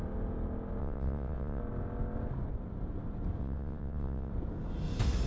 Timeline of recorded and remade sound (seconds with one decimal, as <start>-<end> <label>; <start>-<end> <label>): 0.0-0.8 recorded; 0.8-1.6 remade; 1.6-3.4 recorded; 3.4-4.3 remade; 4.3-5.3 recorded